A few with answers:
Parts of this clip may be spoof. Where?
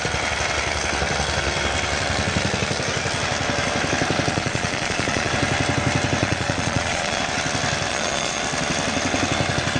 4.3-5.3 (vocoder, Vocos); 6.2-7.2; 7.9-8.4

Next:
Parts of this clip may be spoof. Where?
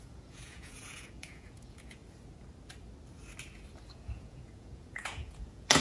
0.0-2.0 (vocoder, Vocos); 3.9-5.8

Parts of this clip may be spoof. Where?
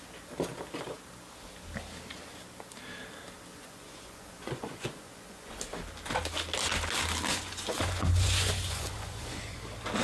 3.5-5.6 (vocoder, Vocos); 7.3-9.6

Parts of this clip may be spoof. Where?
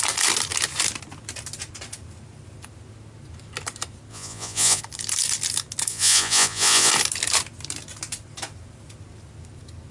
4.1-4.8 (vocoder, Vocos); 5.9-6.9